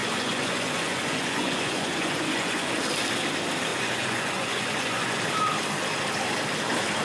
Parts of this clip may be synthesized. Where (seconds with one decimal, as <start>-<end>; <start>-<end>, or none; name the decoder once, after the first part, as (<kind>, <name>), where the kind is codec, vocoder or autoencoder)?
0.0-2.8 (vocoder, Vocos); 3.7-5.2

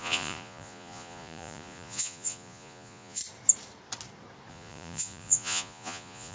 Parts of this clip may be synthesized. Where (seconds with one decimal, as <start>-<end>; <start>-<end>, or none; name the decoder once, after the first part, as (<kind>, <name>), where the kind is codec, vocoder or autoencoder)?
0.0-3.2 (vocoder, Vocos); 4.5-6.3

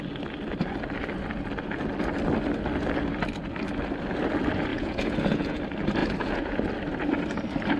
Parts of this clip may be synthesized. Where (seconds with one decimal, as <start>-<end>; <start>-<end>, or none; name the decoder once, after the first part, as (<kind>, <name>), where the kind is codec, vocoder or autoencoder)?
4.7-5.6 (vocoder, Vocos); 6.0-6.5

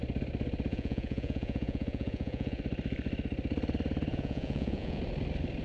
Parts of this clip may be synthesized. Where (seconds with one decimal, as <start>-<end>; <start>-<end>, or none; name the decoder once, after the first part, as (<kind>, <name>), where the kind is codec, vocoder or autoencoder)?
0.7-2.6 (vocoder, Vocos); 4.1-5.0

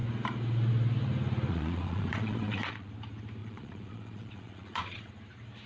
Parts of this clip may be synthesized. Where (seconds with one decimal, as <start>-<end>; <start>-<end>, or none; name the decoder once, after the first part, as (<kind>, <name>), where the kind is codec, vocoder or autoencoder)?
1.5-2.9 (vocoder, Vocos); 3.4-5.1

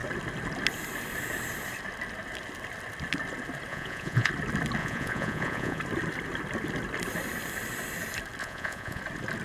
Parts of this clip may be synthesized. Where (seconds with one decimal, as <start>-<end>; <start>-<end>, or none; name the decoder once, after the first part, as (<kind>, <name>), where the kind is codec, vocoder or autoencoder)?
3.7-4.3 (vocoder, Vocos); 4.8-5.8; 8.4-9.0

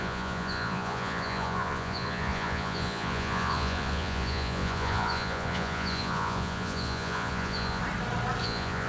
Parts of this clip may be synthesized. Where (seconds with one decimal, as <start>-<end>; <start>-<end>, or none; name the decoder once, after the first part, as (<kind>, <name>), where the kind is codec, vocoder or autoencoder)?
0.0-7.8 (vocoder, Vocos); 8.4-8.9

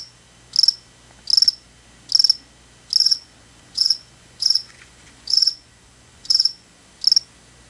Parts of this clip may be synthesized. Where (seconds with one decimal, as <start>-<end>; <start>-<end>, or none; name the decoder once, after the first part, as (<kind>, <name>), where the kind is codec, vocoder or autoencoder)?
3.0-6.9 (vocoder, Vocos)